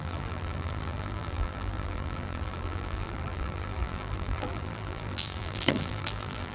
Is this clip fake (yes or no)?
yes